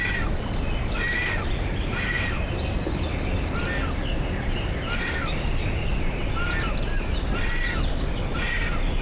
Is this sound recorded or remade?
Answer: recorded